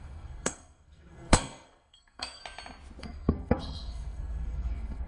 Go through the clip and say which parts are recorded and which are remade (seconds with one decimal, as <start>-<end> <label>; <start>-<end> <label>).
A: 0.0-2.4 remade; 2.4-3.0 recorded; 3.0-5.1 remade